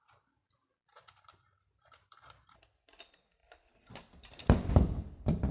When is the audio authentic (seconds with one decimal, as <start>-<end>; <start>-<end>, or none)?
0.0-3.4